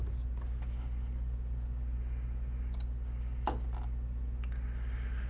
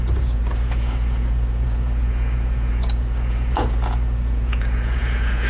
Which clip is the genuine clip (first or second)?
first